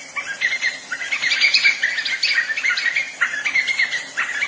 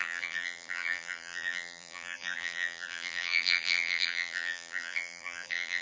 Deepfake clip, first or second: second